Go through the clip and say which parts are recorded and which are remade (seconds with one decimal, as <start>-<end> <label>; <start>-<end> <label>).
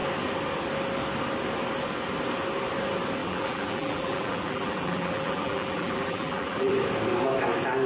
0.0-3.2 recorded; 3.2-6.7 remade; 6.7-7.9 recorded